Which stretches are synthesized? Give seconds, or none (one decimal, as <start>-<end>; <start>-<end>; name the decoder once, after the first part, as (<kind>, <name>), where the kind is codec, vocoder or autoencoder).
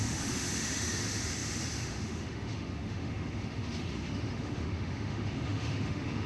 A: 0.0-6.3 (autoencoder, DAC-VAE)